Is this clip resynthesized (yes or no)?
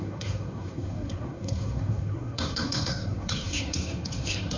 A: yes